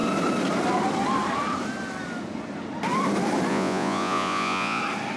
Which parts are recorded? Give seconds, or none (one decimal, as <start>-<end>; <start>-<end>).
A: 0.0-3.5; 4.8-5.2